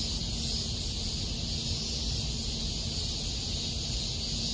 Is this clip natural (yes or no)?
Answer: yes